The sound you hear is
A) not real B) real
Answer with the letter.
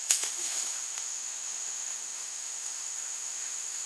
A